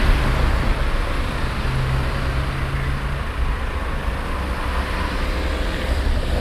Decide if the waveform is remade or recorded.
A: recorded